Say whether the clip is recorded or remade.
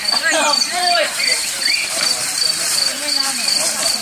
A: remade